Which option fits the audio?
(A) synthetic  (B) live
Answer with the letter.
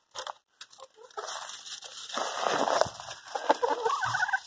B